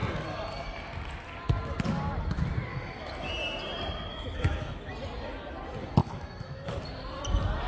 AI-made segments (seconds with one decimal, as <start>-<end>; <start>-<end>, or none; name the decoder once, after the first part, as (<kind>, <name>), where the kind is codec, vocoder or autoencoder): 2.7-3.3 (autoencoder, DAC-VAE); 4.1-4.9; 6.0-6.7